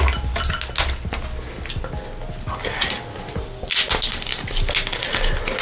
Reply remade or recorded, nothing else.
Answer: recorded